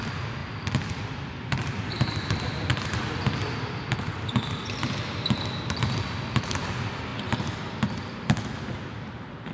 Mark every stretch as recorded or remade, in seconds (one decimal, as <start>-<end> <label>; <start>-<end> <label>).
0.0-2.7 remade; 2.7-4.9 recorded; 4.9-7.1 remade; 7.1-8.7 recorded; 8.7-9.5 remade